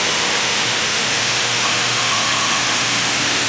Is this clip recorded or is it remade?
remade